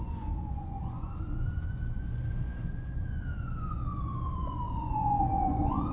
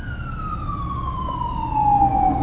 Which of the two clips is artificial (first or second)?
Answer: first